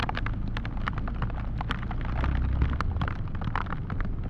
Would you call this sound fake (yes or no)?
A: no